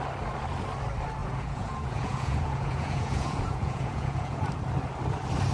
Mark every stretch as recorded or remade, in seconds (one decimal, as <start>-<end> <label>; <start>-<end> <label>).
0.0-1.2 recorded; 1.2-4.5 remade; 4.5-5.5 recorded